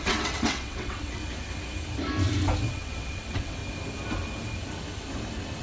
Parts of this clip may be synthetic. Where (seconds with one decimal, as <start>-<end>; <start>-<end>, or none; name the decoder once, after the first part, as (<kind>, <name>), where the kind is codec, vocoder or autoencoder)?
0.0-1.2 (vocoder, WaveNeXt); 2.7-3.6